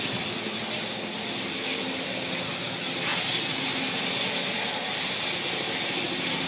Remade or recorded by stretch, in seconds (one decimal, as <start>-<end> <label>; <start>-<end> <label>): 0.0-6.5 recorded